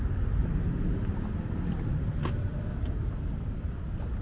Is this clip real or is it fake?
real